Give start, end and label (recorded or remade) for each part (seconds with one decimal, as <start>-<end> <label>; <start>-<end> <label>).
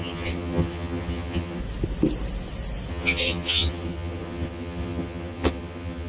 0.0-1.6 remade; 1.6-2.9 recorded; 2.9-6.1 remade